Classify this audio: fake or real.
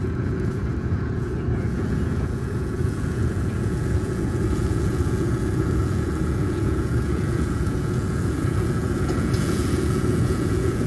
fake